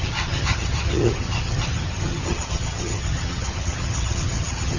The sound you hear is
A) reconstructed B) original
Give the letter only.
A